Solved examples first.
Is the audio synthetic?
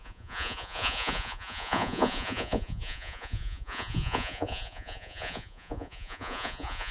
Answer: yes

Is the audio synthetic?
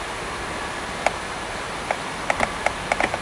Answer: no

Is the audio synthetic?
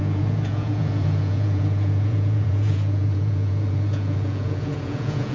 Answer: yes